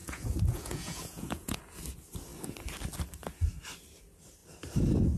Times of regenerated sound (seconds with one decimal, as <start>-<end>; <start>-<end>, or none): 0.0-1.6